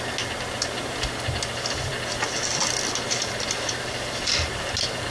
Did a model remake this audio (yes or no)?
no